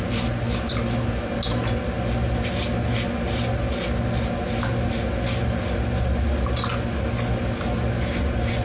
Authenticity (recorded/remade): recorded